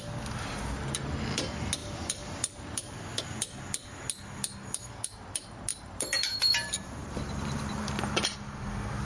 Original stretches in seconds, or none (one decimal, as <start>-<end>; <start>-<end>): 0.0-1.8; 3.2-5.7; 8.0-9.0